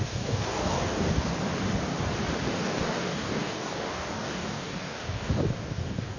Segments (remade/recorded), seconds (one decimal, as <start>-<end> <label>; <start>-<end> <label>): 0.0-1.3 remade; 1.3-2.4 recorded; 2.4-6.2 remade